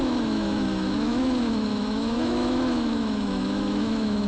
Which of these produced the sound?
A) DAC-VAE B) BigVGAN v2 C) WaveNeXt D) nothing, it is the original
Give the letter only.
A